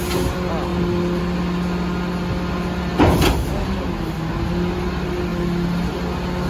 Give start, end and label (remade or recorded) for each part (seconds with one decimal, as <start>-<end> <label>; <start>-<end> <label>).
0.0-6.5 recorded